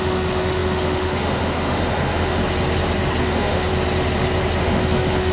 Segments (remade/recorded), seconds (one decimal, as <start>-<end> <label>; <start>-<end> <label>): 0.0-2.4 remade; 2.4-3.2 recorded; 3.2-3.7 remade; 3.7-4.6 recorded; 4.6-5.3 remade